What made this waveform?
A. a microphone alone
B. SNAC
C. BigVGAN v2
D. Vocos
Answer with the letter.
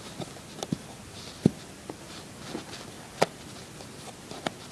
A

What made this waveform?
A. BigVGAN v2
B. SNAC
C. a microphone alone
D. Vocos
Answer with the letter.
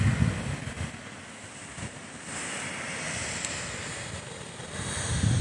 C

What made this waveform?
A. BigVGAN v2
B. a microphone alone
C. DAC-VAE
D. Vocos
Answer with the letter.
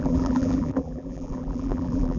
A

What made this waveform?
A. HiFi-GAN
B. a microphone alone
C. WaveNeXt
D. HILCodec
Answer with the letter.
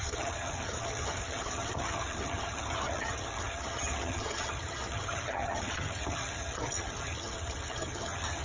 A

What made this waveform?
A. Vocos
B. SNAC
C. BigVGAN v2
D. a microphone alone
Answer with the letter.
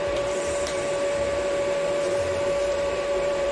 C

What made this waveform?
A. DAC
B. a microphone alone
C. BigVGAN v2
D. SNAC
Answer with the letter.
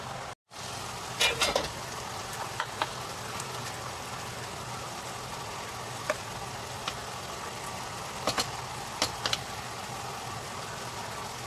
B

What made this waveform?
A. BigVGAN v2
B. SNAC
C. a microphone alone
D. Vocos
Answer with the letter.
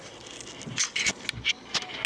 C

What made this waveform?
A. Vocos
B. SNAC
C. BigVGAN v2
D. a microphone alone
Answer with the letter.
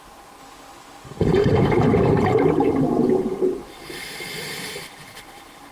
D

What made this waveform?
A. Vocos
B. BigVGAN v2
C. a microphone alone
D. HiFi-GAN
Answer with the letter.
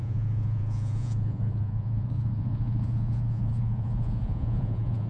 A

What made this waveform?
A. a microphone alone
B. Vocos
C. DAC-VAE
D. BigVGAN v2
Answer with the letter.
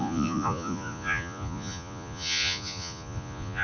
B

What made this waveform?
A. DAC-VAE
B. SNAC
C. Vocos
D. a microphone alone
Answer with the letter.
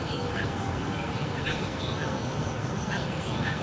B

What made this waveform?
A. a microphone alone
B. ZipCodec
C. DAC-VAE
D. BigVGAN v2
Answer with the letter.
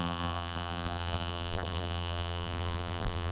D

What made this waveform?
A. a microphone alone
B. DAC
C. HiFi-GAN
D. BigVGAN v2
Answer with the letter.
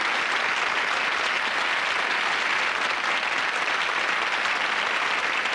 A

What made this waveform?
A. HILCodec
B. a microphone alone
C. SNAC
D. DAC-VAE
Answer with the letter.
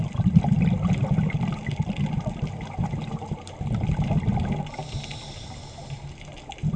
B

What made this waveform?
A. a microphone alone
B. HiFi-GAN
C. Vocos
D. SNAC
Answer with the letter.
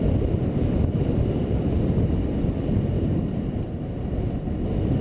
A